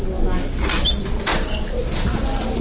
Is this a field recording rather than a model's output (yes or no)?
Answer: yes